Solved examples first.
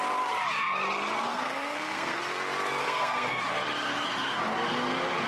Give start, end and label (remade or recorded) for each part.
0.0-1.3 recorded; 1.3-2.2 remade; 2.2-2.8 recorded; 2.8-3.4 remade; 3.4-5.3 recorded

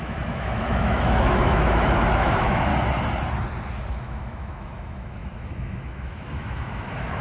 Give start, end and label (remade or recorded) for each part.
0.0-2.7 remade; 2.7-3.9 recorded; 3.9-7.2 remade

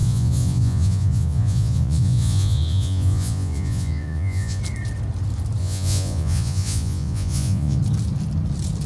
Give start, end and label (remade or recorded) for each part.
0.0-4.6 remade; 4.6-5.6 recorded; 5.6-7.8 remade; 7.8-8.9 recorded